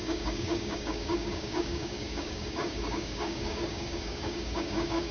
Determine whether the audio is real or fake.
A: fake